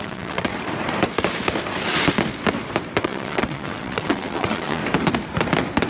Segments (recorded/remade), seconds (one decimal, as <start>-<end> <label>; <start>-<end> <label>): 0.0-0.5 remade; 0.5-3.0 recorded; 3.0-4.8 remade; 4.8-5.9 recorded